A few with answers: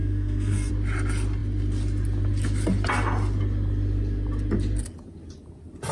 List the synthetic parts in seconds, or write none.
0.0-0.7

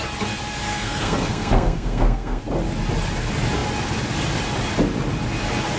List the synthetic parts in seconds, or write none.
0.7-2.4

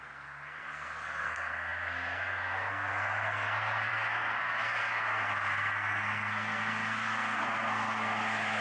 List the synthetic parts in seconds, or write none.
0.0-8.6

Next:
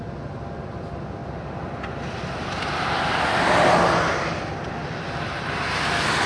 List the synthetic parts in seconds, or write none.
none